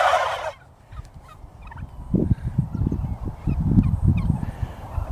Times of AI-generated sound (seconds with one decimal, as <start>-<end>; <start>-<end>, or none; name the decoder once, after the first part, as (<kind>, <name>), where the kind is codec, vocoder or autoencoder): none